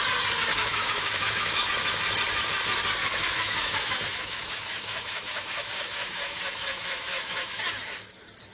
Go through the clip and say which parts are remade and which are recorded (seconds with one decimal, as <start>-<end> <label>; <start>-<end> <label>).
0.0-0.5 recorded; 0.5-1.7 remade; 1.7-3.0 recorded; 3.0-7.6 remade; 7.6-8.5 recorded